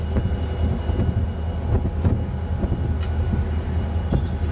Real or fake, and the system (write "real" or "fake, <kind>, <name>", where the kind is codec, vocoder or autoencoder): real